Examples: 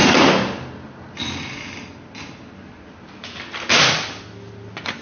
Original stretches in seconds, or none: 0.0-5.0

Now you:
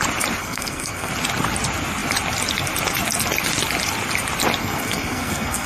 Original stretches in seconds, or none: 0.0-0.4; 1.1-4.6